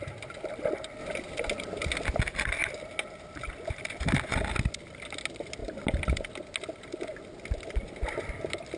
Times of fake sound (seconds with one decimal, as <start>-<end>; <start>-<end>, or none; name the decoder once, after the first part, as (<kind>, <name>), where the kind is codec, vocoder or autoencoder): none